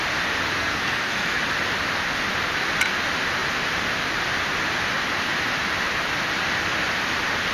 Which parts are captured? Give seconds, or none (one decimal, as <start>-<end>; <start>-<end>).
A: 0.0-0.6; 1.4-7.5